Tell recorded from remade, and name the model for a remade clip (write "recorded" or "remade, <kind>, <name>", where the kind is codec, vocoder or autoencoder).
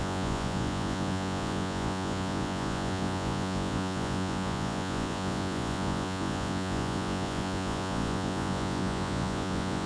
remade, vocoder, Vocos